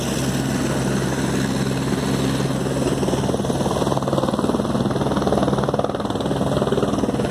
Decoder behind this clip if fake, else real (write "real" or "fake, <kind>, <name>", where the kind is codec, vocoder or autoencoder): real